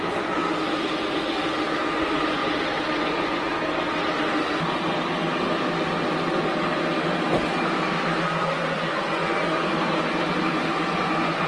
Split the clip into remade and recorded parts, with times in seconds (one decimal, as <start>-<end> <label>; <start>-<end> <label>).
0.0-0.4 remade; 0.4-1.9 recorded; 1.9-2.4 remade; 2.4-3.0 recorded; 3.0-3.5 remade; 3.5-8.2 recorded; 8.2-9.6 remade; 9.6-10.4 recorded; 10.4-11.5 remade